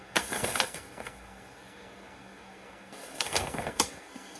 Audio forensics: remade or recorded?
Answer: remade